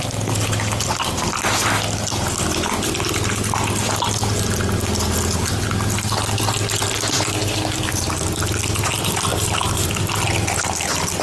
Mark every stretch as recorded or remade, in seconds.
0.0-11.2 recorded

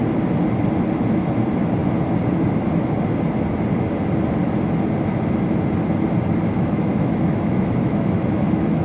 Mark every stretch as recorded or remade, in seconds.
0.0-6.5 recorded; 6.5-8.8 remade

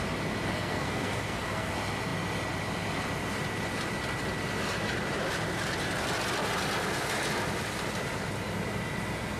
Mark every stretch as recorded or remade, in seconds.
0.0-0.5 recorded; 0.5-1.7 remade; 1.7-9.4 recorded

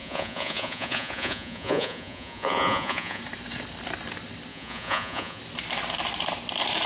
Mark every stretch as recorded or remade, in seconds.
0.0-3.2 remade; 3.2-4.5 recorded; 4.5-5.4 remade; 5.4-6.9 recorded

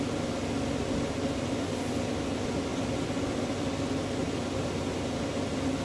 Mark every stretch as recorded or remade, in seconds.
0.0-5.8 recorded

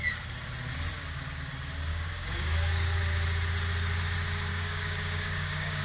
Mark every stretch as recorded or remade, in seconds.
0.0-1.9 recorded; 1.9-3.0 remade; 3.0-4.5 recorded; 4.5-5.8 remade

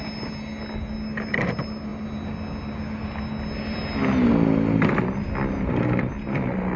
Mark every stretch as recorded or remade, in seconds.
0.0-6.8 recorded

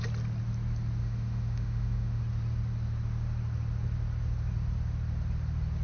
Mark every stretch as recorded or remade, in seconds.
0.0-1.0 recorded; 1.0-2.2 remade; 2.2-5.8 recorded